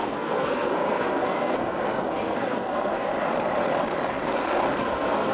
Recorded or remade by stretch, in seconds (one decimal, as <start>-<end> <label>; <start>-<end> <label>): 0.0-3.1 remade; 3.1-4.8 recorded; 4.8-5.3 remade